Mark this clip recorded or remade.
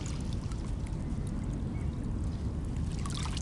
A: recorded